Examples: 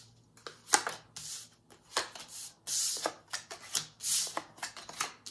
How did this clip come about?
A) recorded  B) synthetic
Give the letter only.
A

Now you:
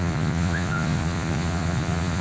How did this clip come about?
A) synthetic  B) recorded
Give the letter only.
A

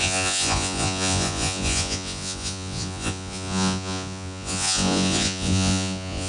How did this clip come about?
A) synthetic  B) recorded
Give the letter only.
A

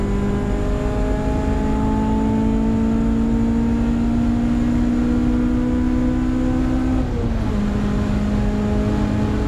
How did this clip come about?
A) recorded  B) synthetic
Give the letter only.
A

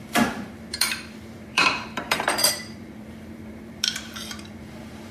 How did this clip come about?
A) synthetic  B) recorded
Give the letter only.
A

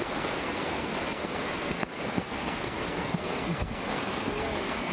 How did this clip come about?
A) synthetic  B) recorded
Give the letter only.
A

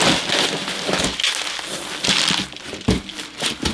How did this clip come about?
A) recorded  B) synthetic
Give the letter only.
A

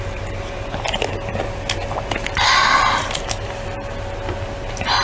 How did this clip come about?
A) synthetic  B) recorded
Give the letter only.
B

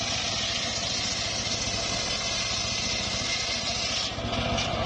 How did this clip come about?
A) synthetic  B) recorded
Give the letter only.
B